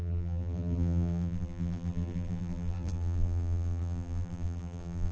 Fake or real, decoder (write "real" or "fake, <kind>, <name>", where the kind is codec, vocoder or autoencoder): fake, vocoder, BigVGAN v2